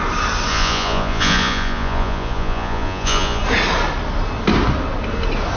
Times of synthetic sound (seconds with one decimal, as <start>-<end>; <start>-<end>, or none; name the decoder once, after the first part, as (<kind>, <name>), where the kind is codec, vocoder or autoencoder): 0.5-3.4 (vocoder, Vocos)